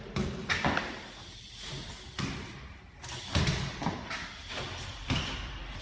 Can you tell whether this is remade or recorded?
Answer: recorded